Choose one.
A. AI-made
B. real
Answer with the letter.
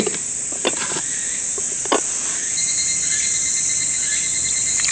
B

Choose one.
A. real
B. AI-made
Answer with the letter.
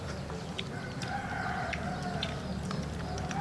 A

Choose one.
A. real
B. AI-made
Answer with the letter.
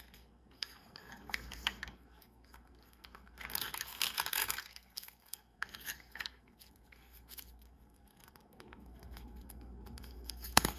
B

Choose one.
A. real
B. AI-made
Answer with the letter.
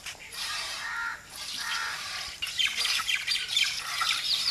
B